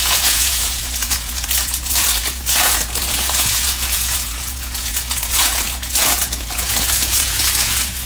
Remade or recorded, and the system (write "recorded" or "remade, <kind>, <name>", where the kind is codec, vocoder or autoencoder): remade, vocoder, Vocos